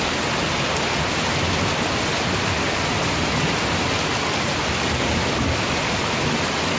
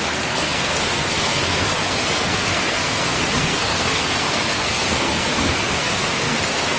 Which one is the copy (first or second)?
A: second